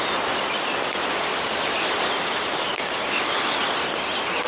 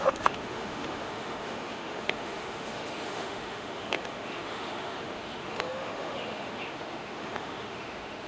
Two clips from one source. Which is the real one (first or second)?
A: first